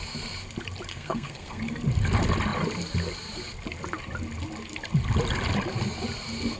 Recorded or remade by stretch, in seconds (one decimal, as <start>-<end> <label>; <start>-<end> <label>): 0.0-0.9 recorded; 0.9-1.6 remade; 1.6-6.6 recorded